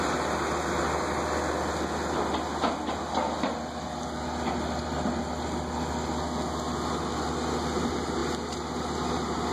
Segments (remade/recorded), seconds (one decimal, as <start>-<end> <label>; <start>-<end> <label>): 0.0-9.5 recorded